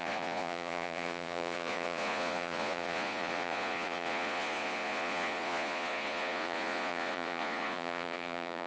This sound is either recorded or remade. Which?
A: remade